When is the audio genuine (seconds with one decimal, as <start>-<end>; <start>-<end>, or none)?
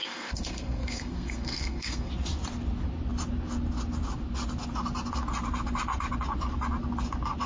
2.1-7.5